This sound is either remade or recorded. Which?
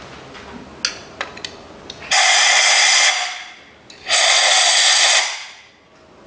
recorded